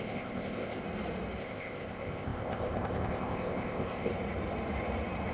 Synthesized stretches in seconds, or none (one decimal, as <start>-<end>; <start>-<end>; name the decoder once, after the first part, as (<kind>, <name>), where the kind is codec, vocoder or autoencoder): 0.0-0.8 (codec, ZipCodec); 1.4-4.1